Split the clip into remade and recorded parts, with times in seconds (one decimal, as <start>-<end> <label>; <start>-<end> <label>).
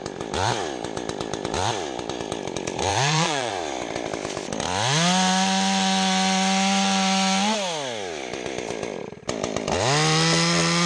0.0-2.9 recorded; 2.9-3.5 remade; 3.5-10.9 recorded